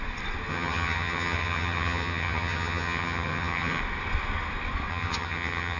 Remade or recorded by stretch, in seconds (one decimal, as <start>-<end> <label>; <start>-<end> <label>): 0.0-0.5 recorded; 0.5-3.8 remade; 3.8-4.9 recorded; 4.9-5.8 remade